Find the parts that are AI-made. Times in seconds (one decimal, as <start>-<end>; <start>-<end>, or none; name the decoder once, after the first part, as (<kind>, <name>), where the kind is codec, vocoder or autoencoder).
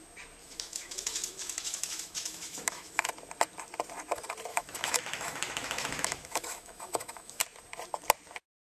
0.4-3.1 (autoencoder, DAC-VAE); 4.5-7.4